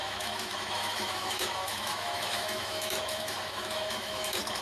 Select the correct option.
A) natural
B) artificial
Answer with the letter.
B